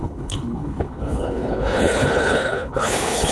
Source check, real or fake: fake